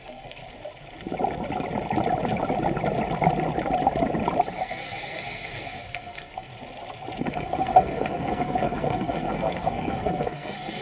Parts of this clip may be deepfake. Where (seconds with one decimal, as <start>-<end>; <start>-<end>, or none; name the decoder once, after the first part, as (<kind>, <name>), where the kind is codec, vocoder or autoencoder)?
0.0-0.4 (codec, SNAC); 4.6-6.5; 7.2-10.8